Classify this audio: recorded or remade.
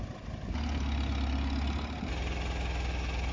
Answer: recorded